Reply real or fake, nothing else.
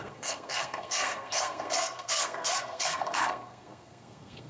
fake